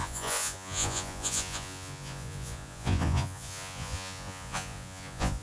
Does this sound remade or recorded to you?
remade